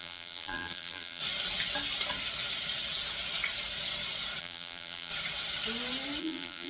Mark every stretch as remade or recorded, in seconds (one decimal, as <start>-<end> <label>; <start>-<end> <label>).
0.0-1.2 remade; 1.2-4.4 recorded; 4.4-5.1 remade; 5.1-6.2 recorded; 6.2-6.7 remade